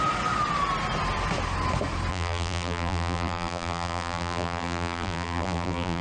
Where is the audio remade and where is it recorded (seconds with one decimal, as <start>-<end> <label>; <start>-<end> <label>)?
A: 0.0-2.1 recorded; 2.1-6.0 remade

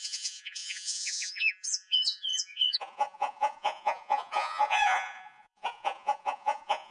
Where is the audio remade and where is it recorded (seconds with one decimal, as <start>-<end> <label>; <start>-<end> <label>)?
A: 0.0-6.9 remade

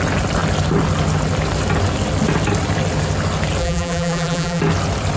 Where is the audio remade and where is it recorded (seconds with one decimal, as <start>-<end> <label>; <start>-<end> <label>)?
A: 0.0-3.6 recorded; 3.6-4.6 remade; 4.6-5.2 recorded

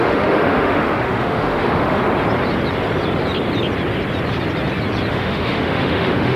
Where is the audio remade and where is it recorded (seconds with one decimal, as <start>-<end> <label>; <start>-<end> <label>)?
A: 0.0-2.0 remade; 2.0-5.1 recorded; 5.1-6.4 remade

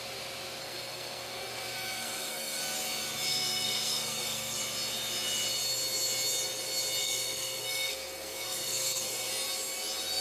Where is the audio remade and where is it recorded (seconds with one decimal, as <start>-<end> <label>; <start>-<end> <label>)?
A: 0.0-0.6 recorded; 0.6-2.6 remade; 2.6-3.3 recorded; 3.3-4.6 remade; 4.6-7.0 recorded; 7.0-9.3 remade; 9.3-10.2 recorded

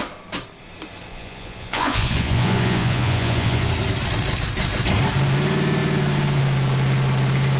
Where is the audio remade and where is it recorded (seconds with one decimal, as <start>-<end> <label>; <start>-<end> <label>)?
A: 0.0-1.1 recorded; 1.1-3.7 remade; 3.7-7.6 recorded